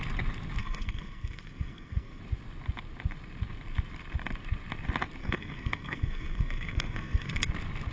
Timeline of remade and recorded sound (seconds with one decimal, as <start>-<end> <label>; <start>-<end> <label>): 0.0-0.6 recorded; 0.6-2.2 remade; 2.2-5.2 recorded; 5.2-7.5 remade; 7.5-7.9 recorded